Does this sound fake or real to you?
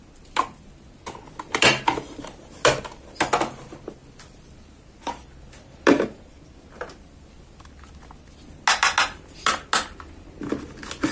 real